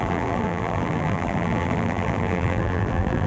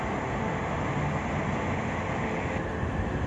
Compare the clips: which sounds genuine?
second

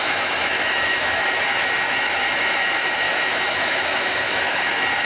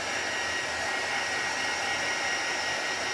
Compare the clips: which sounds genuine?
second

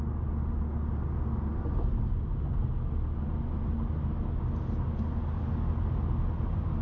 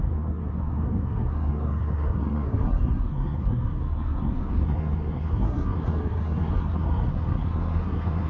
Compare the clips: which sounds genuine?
first